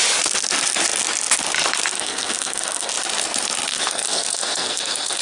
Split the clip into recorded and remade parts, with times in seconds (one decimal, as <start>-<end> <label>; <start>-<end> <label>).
0.0-1.9 recorded; 1.9-2.9 remade; 2.9-3.7 recorded; 3.7-5.2 remade